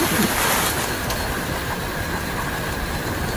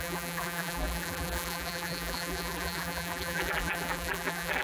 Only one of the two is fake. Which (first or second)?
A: second